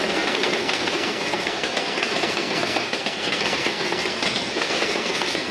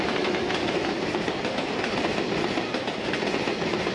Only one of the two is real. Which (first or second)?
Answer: second